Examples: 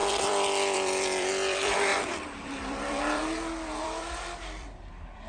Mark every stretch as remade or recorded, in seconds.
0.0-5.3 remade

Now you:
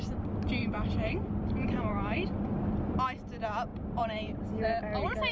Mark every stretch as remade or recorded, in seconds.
0.0-0.6 recorded; 0.6-2.8 remade; 2.8-3.7 recorded; 3.7-4.5 remade; 4.5-5.3 recorded